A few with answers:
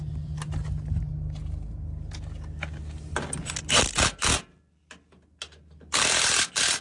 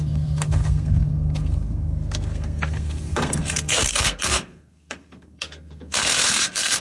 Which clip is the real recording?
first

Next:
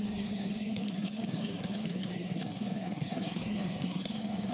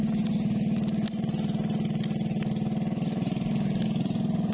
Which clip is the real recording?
second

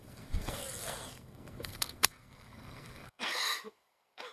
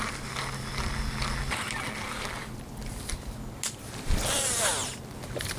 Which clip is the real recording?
second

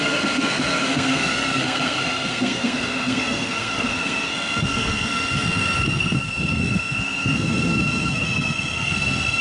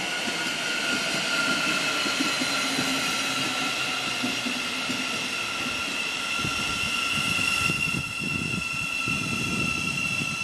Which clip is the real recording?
second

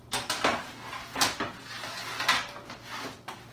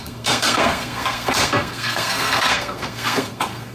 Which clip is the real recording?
first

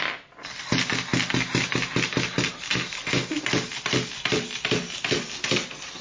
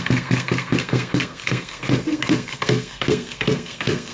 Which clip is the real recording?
first